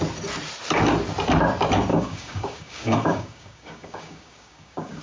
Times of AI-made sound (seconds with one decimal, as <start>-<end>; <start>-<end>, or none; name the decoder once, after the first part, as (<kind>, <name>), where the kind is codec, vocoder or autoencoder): 1.9-5.0 (codec, DAC)